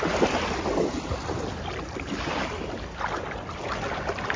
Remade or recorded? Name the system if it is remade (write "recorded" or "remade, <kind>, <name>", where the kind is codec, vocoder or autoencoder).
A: recorded